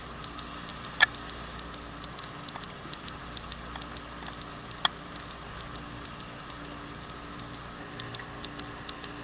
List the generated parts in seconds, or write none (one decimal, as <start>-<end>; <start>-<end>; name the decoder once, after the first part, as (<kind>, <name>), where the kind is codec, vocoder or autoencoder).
none